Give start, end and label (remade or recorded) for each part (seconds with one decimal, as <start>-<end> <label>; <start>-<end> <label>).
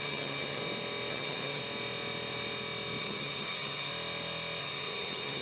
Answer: 0.0-0.6 remade; 0.6-1.1 recorded; 1.1-1.6 remade; 1.6-3.0 recorded; 3.0-3.9 remade; 3.9-4.6 recorded; 4.6-5.4 remade